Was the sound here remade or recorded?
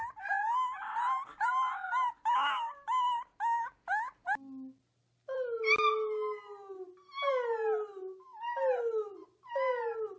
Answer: recorded